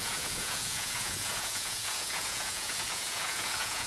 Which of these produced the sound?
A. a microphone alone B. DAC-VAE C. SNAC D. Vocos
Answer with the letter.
D